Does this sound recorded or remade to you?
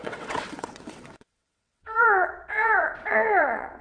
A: remade